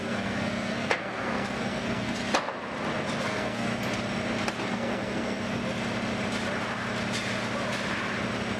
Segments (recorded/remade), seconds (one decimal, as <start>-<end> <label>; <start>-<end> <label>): 0.0-2.2 remade; 2.2-3.2 recorded; 3.2-3.7 remade; 3.7-4.6 recorded; 4.6-5.6 remade; 5.6-8.6 recorded